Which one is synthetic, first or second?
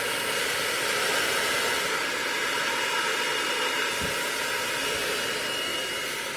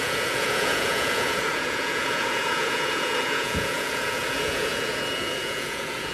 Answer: second